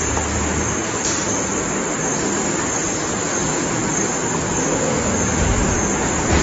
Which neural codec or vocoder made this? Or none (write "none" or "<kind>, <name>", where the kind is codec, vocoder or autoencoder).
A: none